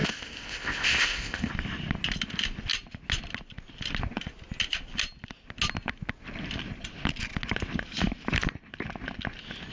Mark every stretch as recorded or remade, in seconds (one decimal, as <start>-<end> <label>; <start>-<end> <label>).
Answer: 0.0-1.5 remade; 1.5-9.7 recorded